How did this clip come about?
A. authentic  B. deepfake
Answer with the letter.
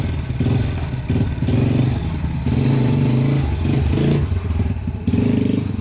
A